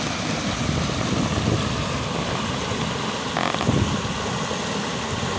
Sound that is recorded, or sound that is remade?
recorded